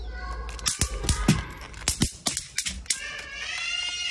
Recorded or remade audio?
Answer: recorded